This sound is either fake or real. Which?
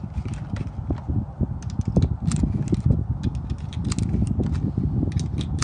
real